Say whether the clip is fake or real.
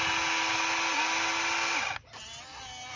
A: real